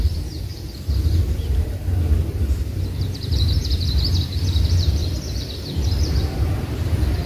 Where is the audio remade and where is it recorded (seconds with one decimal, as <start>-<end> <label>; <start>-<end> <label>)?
0.0-3.6 remade; 3.6-4.3 recorded; 4.3-5.0 remade; 5.0-5.7 recorded; 5.7-7.3 remade